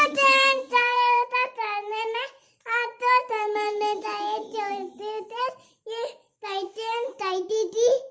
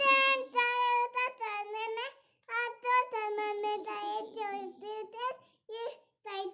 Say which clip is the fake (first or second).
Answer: first